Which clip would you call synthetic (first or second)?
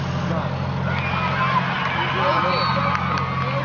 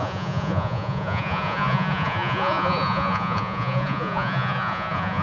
second